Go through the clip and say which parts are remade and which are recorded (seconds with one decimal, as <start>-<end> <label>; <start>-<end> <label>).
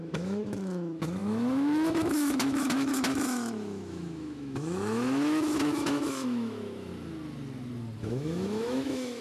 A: 0.0-6.9 remade; 6.9-8.0 recorded; 8.0-9.2 remade